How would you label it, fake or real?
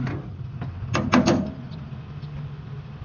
real